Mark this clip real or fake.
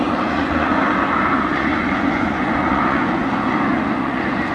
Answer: fake